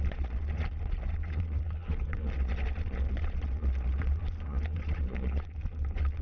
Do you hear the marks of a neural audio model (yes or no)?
yes